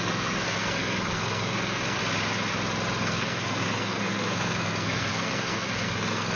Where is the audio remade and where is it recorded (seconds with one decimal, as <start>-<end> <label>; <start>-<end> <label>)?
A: 0.0-2.0 remade; 2.0-3.0 recorded; 3.0-6.4 remade